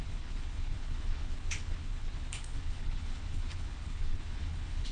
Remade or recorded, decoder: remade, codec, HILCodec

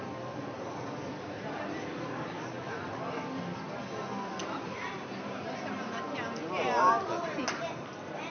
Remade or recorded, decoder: recorded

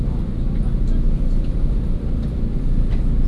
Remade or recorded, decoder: recorded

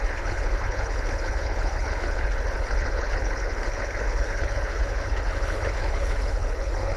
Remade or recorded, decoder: remade, codec, HILCodec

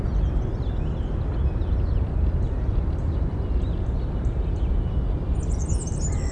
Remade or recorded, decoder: recorded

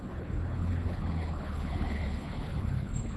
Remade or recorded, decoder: remade, codec, HILCodec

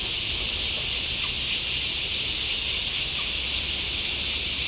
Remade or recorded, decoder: recorded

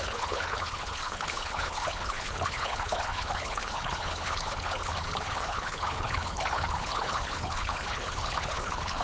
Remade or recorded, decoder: remade, codec, HILCodec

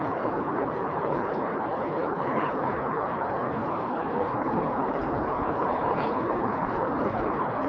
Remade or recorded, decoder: remade, codec, HILCodec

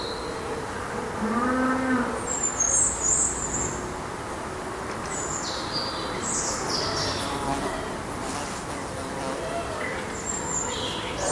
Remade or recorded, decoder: recorded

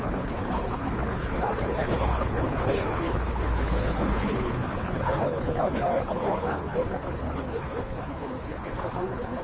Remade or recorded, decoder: remade, codec, HILCodec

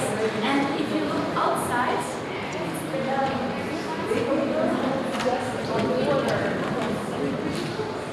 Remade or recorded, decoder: recorded